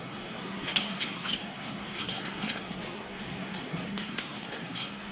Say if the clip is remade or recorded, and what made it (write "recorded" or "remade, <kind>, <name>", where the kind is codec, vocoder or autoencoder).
remade, codec, SNAC